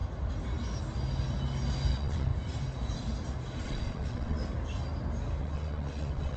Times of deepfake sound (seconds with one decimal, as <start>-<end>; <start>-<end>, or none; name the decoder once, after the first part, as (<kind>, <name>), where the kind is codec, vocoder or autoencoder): 1.9-2.3 (vocoder, WaveNeXt); 3.6-4.4; 5.4-6.4